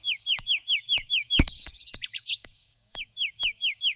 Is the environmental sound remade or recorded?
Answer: remade